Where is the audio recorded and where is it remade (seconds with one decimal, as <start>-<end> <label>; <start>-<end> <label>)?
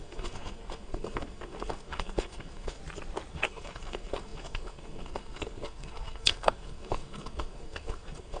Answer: 0.0-2.8 remade; 2.8-3.3 recorded; 3.3-8.4 remade